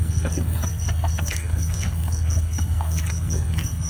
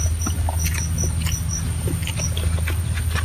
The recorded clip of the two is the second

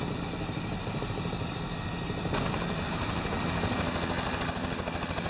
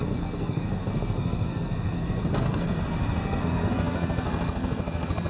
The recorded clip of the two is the first